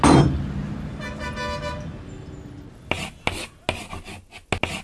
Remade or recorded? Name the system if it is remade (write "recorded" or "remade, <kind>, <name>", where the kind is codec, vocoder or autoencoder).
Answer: recorded